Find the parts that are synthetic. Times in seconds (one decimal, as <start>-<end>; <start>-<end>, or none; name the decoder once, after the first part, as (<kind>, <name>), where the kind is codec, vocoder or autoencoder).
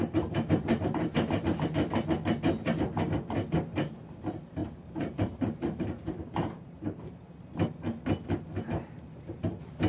4.6-7.1 (vocoder, BigVGAN v2)